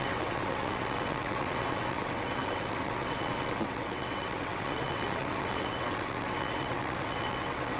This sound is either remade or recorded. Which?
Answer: remade